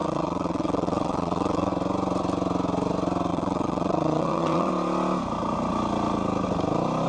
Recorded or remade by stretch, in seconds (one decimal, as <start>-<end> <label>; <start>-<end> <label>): 0.0-1.7 remade; 1.7-3.3 recorded; 3.3-4.7 remade; 4.7-7.1 recorded